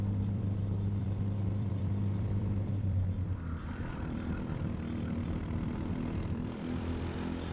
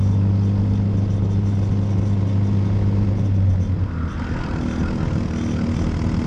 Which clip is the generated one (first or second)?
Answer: first